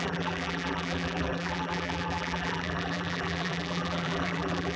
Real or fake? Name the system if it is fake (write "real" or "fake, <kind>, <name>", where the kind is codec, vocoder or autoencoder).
fake, vocoder, BigVGAN v2